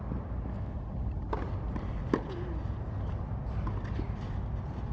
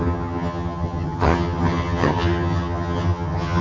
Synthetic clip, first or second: second